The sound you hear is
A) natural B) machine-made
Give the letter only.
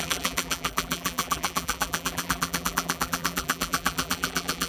B